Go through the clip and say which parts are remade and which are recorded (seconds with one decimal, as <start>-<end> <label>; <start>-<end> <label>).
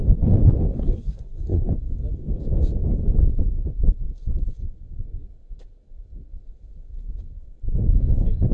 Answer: 0.0-0.7 recorded; 0.7-1.7 remade; 1.7-8.5 recorded